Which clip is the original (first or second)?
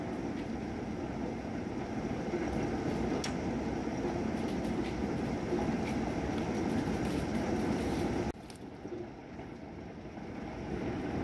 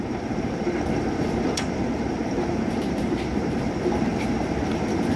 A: first